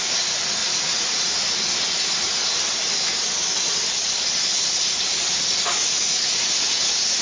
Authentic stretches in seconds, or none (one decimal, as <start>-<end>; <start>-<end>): 0.0-0.6; 1.5-5.8